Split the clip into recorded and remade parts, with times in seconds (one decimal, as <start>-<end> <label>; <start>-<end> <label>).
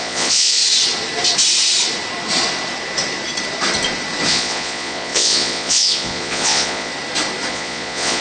0.0-0.6 remade; 0.6-4.3 recorded; 4.3-6.9 remade; 6.9-7.5 recorded; 7.5-8.2 remade